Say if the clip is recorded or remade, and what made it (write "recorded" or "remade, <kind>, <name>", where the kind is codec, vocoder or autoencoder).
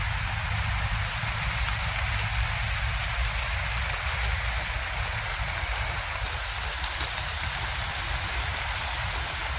recorded